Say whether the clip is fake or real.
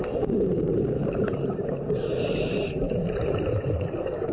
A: fake